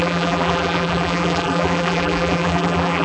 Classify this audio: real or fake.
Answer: fake